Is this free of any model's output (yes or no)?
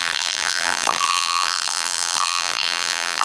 no